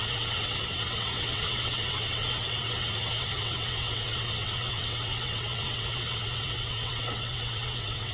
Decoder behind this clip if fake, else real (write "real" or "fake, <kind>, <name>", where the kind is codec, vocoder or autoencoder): fake, vocoder, WaveNeXt